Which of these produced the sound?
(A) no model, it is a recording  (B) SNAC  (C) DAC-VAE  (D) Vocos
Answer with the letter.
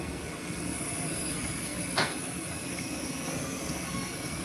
B